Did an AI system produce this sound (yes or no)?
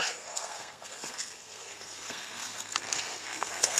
yes